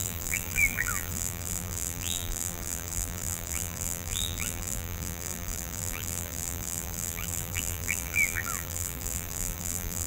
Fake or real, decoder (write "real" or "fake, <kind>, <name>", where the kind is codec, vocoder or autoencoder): fake, vocoder, BigVGAN v2